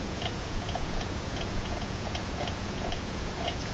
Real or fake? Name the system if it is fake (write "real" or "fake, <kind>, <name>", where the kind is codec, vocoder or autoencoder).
fake, vocoder, Vocos